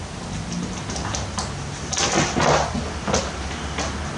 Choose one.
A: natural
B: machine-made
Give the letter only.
A